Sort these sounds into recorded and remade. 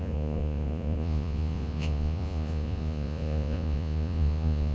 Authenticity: remade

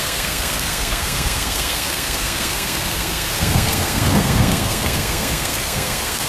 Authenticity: remade